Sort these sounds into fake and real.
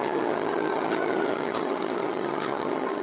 fake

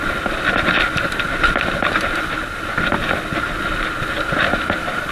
real